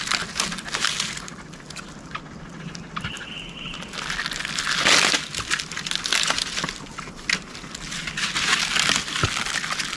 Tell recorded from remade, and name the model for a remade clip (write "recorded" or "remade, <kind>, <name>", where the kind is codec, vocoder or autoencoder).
recorded